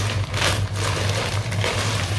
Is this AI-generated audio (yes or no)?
no